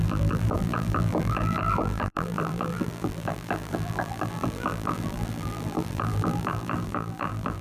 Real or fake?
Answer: fake